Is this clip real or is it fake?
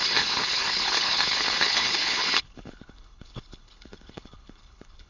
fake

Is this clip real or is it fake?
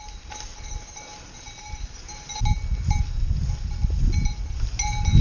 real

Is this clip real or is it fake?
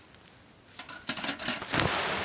real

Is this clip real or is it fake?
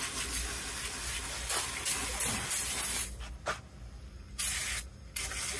real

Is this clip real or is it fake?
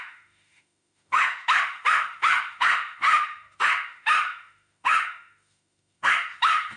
fake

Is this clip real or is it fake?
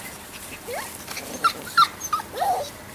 real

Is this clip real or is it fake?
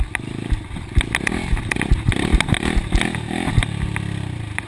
real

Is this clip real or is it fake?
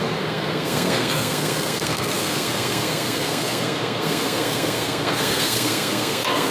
fake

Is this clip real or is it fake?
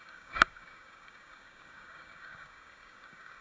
fake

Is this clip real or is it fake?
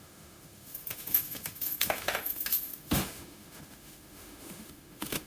fake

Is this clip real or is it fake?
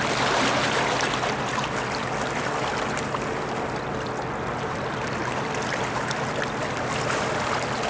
real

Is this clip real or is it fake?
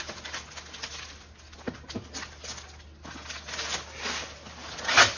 real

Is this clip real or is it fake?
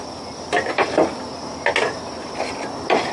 real